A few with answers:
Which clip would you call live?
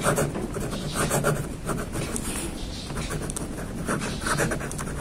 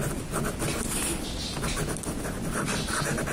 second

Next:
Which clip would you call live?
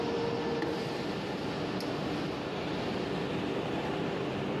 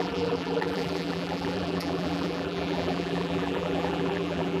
first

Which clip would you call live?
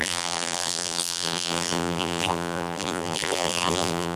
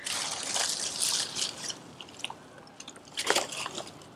second